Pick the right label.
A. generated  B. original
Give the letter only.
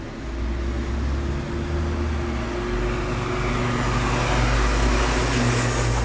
B